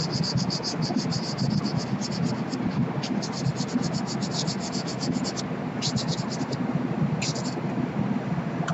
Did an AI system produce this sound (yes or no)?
no